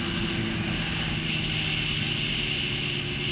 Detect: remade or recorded recorded